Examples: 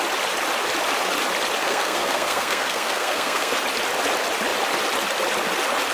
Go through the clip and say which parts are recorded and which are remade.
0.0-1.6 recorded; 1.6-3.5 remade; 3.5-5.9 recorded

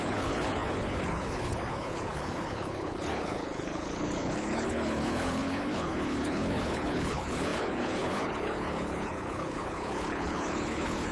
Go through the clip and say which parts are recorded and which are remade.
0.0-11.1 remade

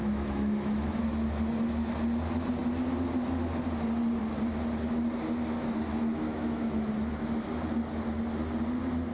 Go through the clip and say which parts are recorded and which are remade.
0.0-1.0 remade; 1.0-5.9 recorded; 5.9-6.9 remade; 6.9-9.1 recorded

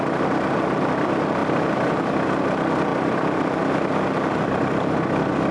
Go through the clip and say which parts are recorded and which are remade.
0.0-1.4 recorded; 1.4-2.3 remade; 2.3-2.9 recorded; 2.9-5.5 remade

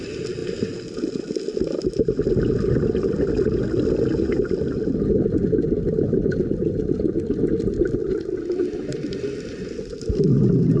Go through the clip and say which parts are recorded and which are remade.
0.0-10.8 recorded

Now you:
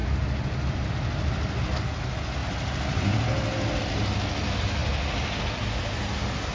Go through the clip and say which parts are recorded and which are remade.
0.0-6.5 recorded

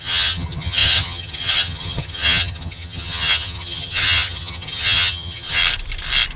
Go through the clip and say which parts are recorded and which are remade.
0.0-5.6 remade; 5.6-6.4 recorded